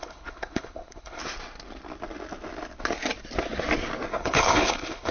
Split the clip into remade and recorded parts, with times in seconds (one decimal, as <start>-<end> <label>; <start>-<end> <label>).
0.0-1.2 remade; 1.2-4.1 recorded; 4.1-5.1 remade